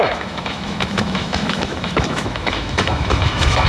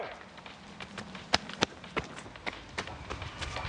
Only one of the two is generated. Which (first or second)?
first